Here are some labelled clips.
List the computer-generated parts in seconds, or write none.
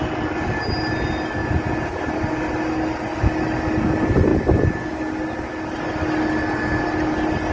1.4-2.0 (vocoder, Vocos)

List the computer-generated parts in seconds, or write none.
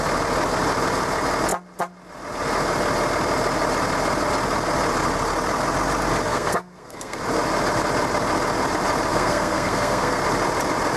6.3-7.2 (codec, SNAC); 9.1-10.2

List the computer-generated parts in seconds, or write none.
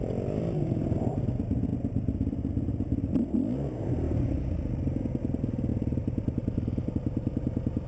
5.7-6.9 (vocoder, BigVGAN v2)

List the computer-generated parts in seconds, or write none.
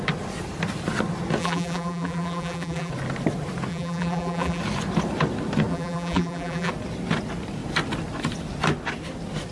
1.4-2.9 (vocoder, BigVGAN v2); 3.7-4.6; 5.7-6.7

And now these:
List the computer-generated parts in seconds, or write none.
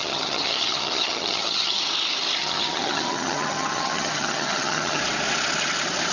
0.0-1.8 (vocoder, HiFi-GAN); 2.4-5.0